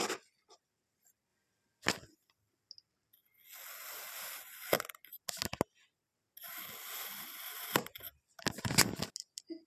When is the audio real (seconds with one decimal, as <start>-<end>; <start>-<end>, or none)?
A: 0.0-9.7

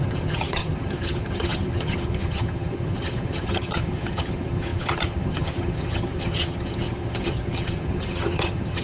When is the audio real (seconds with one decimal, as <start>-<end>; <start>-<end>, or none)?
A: none